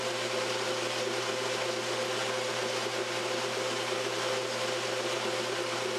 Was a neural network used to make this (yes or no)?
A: no